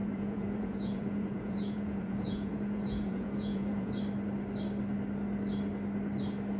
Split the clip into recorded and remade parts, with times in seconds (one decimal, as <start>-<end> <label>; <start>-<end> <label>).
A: 0.0-3.9 remade; 3.9-6.6 recorded